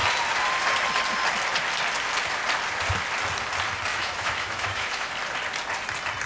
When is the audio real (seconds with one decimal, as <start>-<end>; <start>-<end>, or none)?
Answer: 0.0-3.9; 5.1-6.3